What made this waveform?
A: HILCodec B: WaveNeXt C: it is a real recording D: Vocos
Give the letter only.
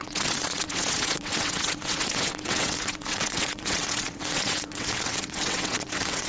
B